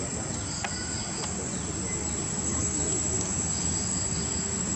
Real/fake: real